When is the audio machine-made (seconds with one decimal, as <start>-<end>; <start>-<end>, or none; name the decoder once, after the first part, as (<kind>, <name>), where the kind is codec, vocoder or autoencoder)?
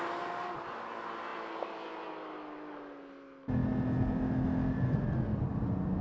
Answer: none